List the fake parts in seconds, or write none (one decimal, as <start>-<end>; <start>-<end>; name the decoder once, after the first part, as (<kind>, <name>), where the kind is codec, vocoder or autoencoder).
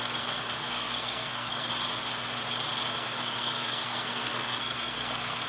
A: 0.0-1.7 (codec, SNAC); 2.9-5.5